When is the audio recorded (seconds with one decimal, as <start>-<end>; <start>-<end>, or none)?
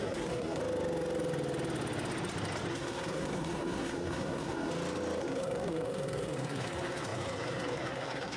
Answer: 0.6-2.7; 4.7-5.2